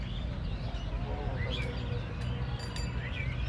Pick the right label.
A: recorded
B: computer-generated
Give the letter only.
A